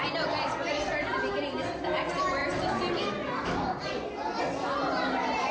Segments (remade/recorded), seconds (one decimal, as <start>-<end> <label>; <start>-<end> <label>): 0.0-5.5 recorded